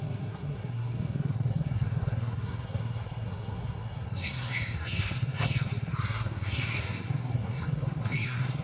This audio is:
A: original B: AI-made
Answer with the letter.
B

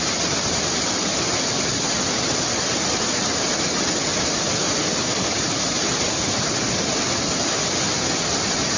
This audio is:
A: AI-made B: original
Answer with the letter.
B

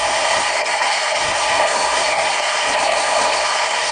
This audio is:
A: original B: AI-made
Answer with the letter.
B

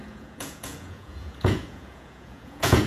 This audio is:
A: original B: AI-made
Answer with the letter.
B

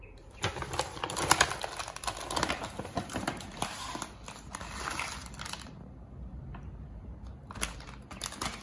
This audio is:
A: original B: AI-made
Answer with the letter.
A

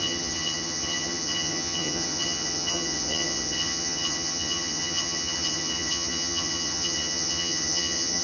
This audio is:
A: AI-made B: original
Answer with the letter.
A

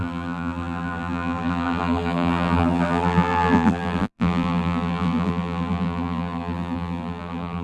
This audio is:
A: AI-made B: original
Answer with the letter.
A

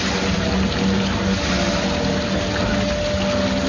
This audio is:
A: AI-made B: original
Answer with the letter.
B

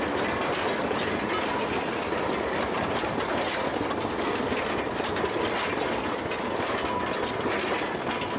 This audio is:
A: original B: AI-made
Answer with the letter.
A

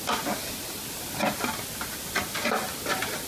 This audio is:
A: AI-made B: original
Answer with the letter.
B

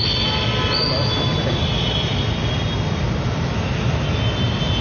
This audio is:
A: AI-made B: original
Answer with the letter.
B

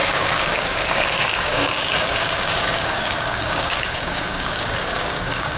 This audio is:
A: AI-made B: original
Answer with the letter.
A